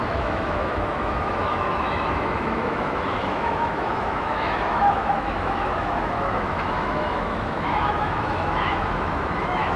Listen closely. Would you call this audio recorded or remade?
remade